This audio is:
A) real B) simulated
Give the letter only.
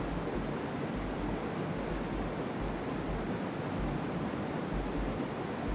A